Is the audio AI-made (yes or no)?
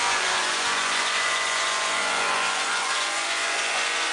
yes